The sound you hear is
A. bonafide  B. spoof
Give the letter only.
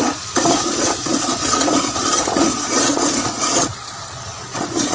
B